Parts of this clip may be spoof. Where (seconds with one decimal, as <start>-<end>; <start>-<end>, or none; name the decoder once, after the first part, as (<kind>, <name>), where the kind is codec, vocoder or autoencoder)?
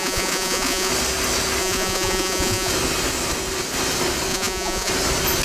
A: 0.0-0.9 (vocoder, Vocos); 1.6-2.7; 4.3-4.9